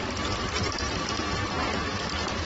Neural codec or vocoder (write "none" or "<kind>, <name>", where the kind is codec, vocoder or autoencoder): vocoder, BigVGAN v2